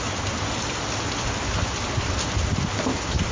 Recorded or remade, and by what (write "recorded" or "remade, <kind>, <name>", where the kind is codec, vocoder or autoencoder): recorded